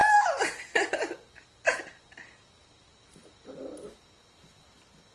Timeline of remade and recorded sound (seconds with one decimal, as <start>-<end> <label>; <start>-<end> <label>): 0.0-5.1 recorded